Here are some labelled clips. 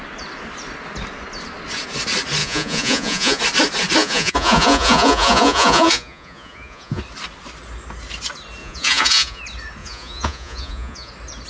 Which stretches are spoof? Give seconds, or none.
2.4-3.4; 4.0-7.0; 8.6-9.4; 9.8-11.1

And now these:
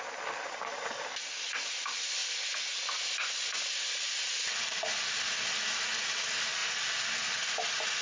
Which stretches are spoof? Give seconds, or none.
none

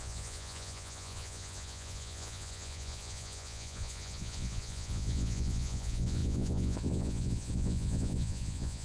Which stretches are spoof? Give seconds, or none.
0.0-8.8

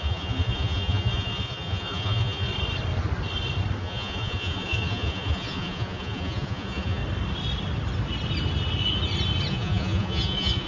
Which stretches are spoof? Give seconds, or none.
0.0-2.5; 3.8-7.0; 9.5-10.7

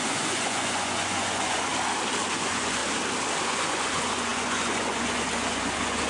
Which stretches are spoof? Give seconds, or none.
0.0-1.7; 2.3-2.8; 3.4-6.1

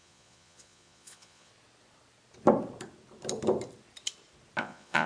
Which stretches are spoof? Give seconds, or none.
0.0-1.5; 4.6-5.1

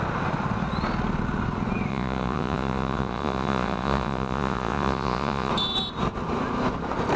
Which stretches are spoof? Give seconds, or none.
1.9-5.5

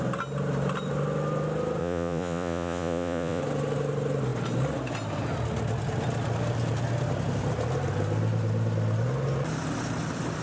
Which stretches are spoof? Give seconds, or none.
1.8-3.4